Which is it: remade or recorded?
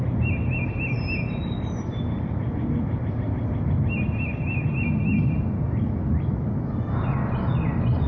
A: recorded